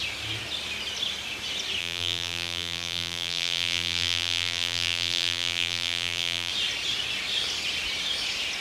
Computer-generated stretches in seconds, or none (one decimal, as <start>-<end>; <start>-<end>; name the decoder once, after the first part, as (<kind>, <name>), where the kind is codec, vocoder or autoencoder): 1.8-6.5 (vocoder, BigVGAN v2)